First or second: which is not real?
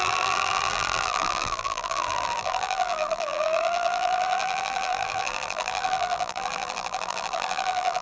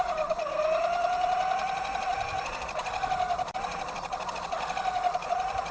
first